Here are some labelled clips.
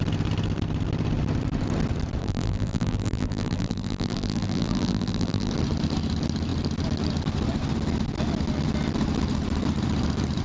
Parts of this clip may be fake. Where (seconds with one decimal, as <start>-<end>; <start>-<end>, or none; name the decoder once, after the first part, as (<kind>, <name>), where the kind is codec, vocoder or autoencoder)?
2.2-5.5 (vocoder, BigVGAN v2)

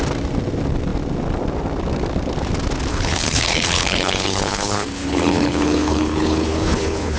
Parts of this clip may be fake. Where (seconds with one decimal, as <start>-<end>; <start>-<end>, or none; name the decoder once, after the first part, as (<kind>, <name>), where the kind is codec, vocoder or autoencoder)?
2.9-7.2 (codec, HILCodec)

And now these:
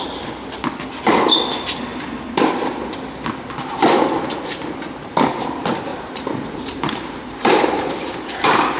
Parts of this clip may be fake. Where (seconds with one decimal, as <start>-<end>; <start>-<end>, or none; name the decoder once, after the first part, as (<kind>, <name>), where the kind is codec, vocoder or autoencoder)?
5.9-7.9 (vocoder, BigVGAN v2)

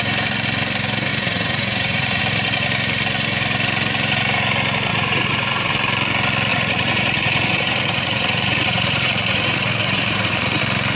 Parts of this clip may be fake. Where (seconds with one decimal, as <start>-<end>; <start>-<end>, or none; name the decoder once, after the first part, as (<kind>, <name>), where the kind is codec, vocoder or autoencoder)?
1.1-2.2 (vocoder, Vocos); 4.9-5.7; 6.5-10.6